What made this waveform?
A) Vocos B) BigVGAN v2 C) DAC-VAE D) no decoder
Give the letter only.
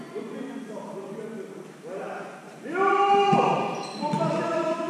D